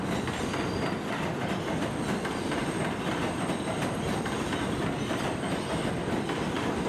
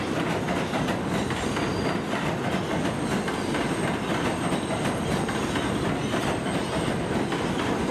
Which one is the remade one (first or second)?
first